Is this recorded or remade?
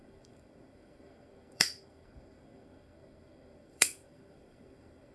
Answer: remade